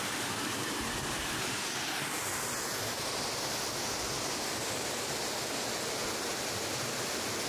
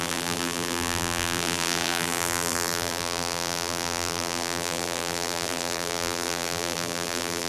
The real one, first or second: first